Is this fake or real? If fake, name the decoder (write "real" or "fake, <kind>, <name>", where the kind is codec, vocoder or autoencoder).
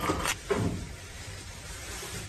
fake, vocoder, BigVGAN v2